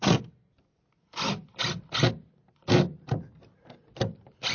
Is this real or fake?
real